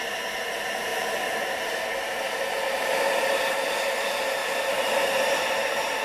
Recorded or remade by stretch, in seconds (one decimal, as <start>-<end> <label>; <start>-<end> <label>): 0.0-0.9 recorded; 0.9-1.8 remade; 1.8-4.4 recorded; 4.4-5.3 remade; 5.3-6.0 recorded